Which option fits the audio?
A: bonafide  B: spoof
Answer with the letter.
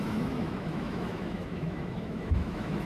B